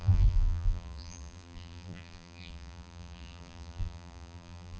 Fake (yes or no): yes